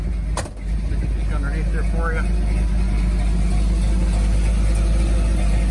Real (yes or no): yes